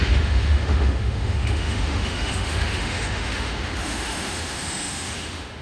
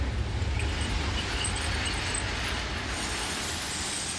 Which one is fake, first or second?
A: first